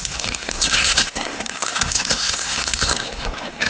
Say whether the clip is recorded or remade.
remade